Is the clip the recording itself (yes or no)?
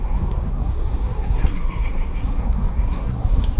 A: no